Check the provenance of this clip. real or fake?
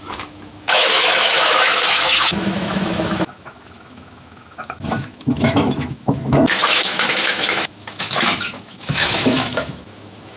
fake